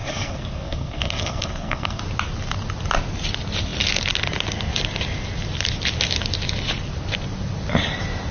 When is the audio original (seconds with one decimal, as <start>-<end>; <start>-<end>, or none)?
2.0-8.3